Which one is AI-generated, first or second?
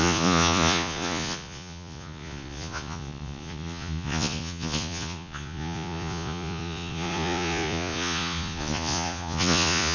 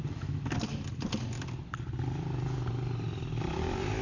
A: first